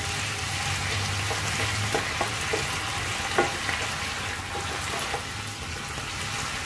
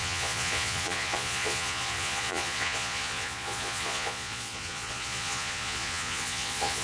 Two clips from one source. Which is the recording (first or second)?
first